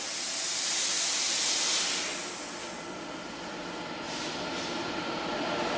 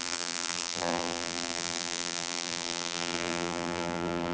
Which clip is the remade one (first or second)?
second